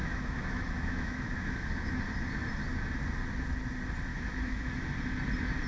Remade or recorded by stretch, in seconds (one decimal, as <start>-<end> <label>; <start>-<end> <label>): 0.0-2.0 remade; 2.0-4.1 recorded; 4.1-4.8 remade; 4.8-5.7 recorded